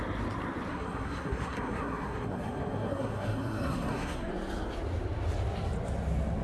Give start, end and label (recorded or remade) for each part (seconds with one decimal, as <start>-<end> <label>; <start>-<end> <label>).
0.0-0.7 recorded; 0.7-4.3 remade; 4.3-6.4 recorded